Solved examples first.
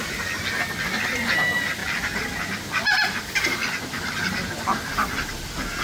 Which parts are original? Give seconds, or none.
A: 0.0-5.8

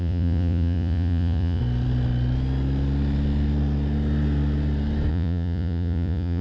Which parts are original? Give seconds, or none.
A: 1.6-5.1

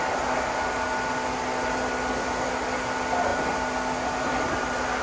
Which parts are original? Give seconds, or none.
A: 0.0-5.0

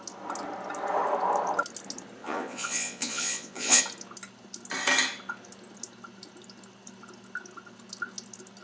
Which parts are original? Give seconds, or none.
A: 0.0-2.2; 3.8-8.6

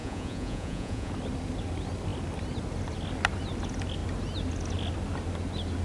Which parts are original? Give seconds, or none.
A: 1.1-5.8